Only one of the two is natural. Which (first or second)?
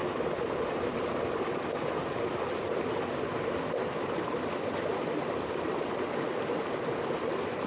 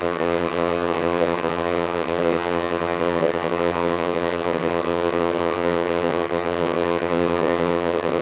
first